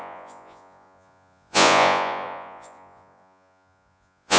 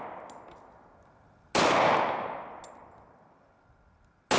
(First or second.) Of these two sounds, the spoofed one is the first